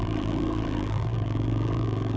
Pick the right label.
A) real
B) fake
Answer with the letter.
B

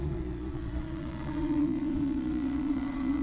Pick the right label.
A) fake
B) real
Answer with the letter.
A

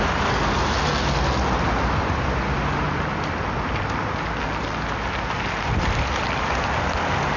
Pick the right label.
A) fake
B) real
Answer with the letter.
B